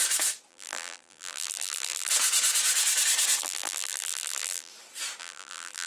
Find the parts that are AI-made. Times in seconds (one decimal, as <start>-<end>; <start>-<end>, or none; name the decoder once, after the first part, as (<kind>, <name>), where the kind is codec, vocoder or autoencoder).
0.5-2.1 (vocoder, BigVGAN v2); 3.4-4.7; 5.2-5.9